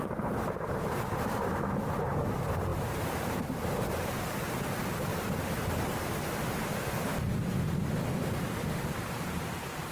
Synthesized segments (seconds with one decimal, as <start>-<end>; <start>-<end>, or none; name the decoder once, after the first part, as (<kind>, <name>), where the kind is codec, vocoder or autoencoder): 0.0-5.1 (vocoder, BigVGAN v2); 8.7-9.9